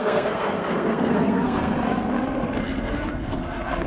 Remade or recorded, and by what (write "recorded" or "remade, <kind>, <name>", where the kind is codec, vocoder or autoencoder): remade, codec, SNAC